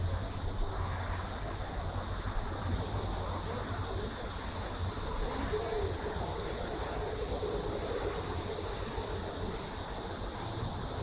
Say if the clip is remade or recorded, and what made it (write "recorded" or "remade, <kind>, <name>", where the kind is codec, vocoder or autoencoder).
recorded